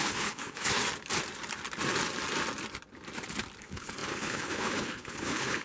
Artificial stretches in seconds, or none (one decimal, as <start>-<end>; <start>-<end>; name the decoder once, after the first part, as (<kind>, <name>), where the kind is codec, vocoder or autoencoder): 0.0-0.8 (codec, HILCodec); 3.6-5.6